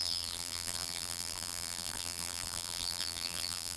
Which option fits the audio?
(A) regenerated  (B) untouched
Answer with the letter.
A